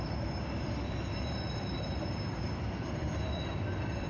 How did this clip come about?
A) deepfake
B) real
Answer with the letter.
A